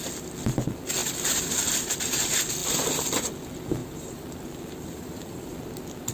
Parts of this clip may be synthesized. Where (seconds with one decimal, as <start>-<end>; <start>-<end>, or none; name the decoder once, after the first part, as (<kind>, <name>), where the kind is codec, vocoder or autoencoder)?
1.0-2.0 (vocoder, BigVGAN v2); 2.6-3.3; 3.8-5.5